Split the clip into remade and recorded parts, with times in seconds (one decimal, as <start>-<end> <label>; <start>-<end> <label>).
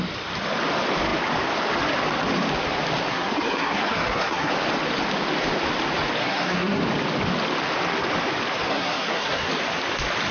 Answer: 0.0-3.1 recorded; 3.1-4.5 remade; 4.5-6.2 recorded; 6.2-6.8 remade; 6.8-8.7 recorded; 8.7-9.5 remade; 9.5-10.3 recorded